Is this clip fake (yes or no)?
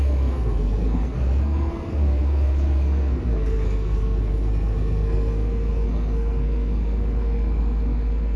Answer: yes